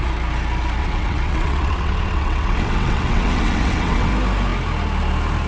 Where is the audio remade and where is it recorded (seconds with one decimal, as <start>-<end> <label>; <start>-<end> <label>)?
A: 0.0-0.8 recorded; 0.8-4.1 remade; 4.1-5.5 recorded